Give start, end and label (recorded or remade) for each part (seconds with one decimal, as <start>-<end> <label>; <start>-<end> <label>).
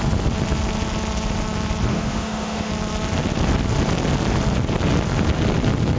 0.0-1.9 recorded; 1.9-2.7 remade; 2.7-6.0 recorded